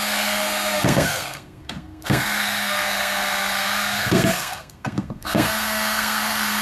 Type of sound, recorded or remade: remade